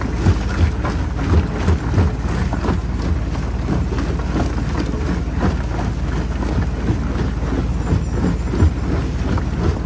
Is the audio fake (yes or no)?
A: no